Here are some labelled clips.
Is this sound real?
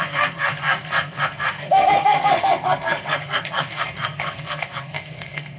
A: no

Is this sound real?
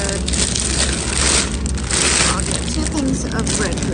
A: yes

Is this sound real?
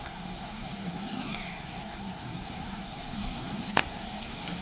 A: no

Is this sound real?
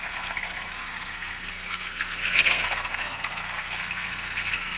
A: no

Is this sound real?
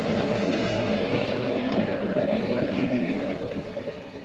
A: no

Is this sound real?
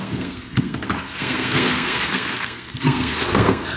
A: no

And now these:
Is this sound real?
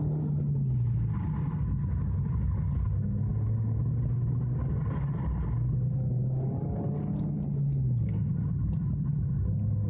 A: yes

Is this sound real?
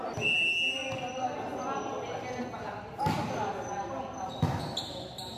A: yes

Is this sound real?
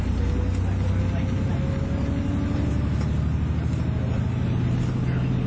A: yes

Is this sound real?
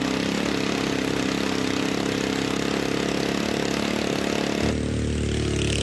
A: yes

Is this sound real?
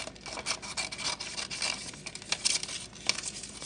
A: yes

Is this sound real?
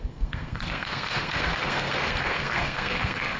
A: no